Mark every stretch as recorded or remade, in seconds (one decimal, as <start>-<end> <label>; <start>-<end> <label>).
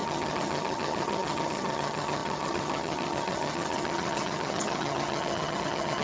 0.0-6.0 remade